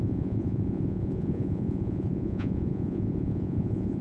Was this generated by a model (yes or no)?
yes